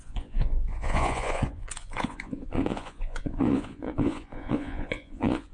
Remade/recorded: remade